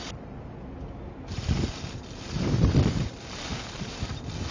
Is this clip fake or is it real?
real